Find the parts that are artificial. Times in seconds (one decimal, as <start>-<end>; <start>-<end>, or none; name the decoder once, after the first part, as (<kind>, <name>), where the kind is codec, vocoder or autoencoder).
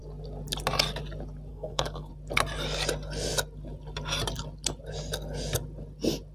1.5-2.1 (codec, SNAC)